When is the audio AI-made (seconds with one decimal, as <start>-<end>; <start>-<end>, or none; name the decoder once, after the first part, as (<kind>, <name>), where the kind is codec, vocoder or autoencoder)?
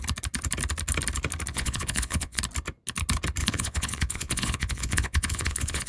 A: 1.5-2.4 (vocoder, Vocos); 3.4-5.9